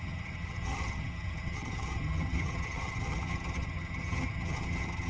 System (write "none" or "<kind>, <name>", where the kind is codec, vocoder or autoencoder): vocoder, HiFi-GAN